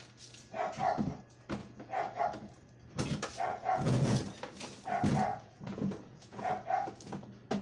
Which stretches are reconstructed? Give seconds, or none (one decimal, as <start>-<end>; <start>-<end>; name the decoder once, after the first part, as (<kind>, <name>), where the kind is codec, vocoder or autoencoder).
1.6-2.2 (vocoder, Vocos); 3.5-4.2; 5.3-6.5